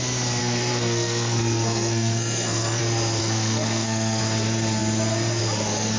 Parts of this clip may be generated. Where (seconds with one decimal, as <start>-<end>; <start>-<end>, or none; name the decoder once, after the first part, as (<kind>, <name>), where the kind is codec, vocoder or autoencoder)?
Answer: 0.4-2.8 (codec, SNAC); 3.2-4.2